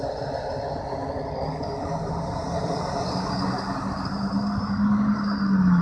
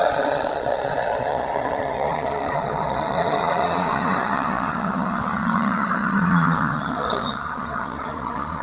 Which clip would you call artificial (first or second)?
second